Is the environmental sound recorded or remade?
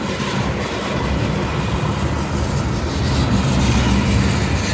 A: recorded